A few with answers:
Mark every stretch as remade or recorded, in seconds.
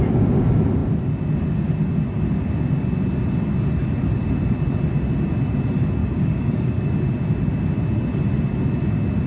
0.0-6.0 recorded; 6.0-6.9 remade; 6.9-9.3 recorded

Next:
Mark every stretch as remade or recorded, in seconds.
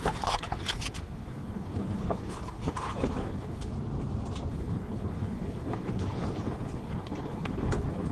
0.0-3.7 remade; 3.7-4.5 recorded; 4.5-8.1 remade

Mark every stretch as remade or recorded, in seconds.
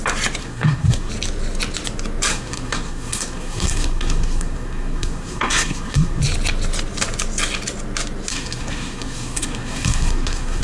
0.0-0.4 recorded; 0.4-1.1 remade; 1.1-2.3 recorded; 2.3-6.2 remade; 6.2-8.3 recorded; 8.3-10.6 remade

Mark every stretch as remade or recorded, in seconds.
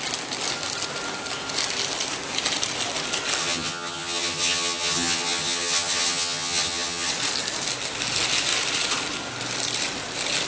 0.0-3.4 recorded; 3.4-7.1 remade; 7.1-10.5 recorded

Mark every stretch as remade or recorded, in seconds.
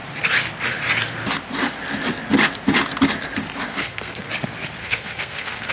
0.0-3.7 recorded; 3.7-4.3 remade; 4.3-4.8 recorded; 4.8-5.7 remade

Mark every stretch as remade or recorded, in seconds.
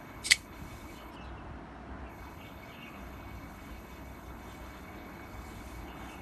0.0-1.1 remade; 1.1-2.1 recorded; 2.1-6.2 remade